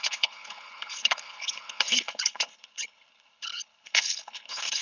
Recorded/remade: remade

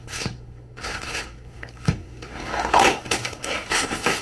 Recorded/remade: remade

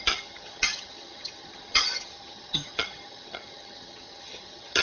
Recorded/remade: remade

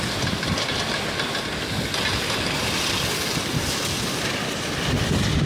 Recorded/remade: recorded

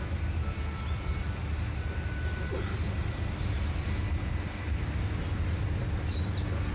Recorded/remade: recorded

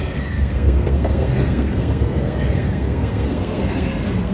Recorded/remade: remade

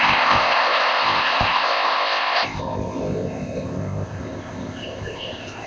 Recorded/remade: remade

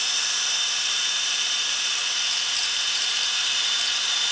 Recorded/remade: remade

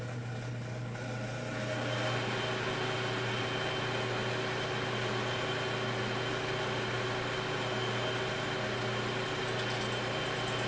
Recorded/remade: recorded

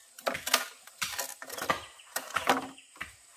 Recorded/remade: recorded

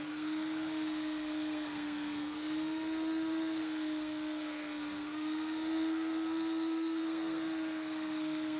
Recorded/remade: remade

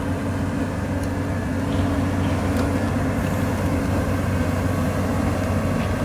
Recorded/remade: recorded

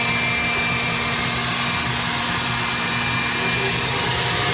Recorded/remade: recorded